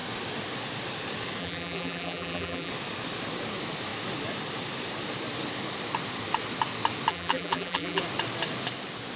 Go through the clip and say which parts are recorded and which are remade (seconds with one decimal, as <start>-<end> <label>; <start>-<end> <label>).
0.0-1.4 recorded; 1.4-2.7 remade; 2.7-7.1 recorded; 7.1-8.0 remade; 8.0-9.2 recorded